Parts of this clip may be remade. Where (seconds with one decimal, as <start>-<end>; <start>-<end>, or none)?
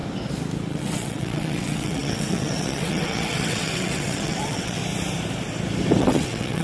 0.7-4.8; 6.0-6.6